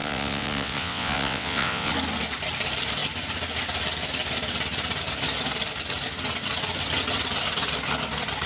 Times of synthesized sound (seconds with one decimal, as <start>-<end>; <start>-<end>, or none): 0.0-1.9